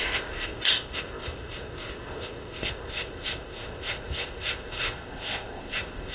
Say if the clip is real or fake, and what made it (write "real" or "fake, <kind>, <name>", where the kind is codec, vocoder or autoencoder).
fake, codec, ZipCodec